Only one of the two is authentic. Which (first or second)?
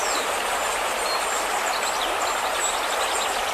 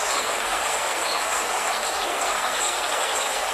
first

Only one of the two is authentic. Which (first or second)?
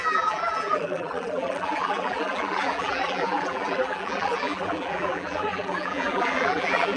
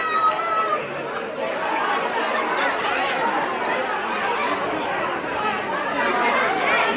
second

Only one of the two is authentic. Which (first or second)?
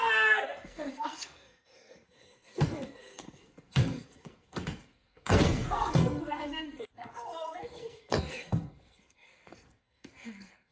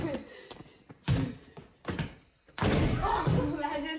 second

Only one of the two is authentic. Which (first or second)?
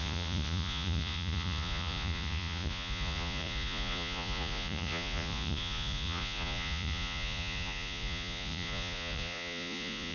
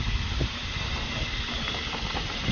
second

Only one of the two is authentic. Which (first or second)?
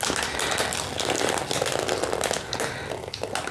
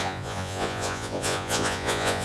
first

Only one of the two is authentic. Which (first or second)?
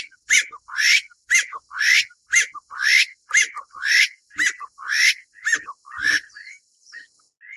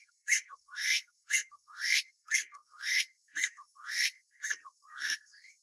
first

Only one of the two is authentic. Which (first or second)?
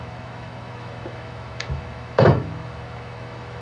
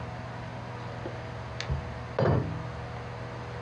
second